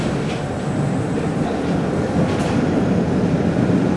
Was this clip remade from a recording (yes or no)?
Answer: no